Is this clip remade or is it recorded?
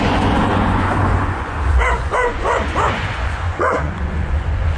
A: remade